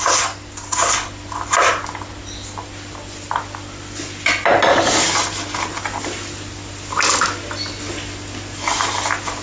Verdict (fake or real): real